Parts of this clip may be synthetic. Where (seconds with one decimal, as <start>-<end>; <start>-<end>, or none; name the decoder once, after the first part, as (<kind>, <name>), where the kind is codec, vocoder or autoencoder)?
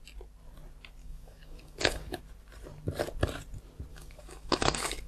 1.0-2.2 (codec, DAC); 3.9-5.1